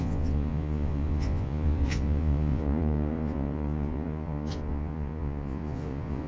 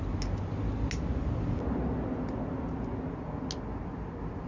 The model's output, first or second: first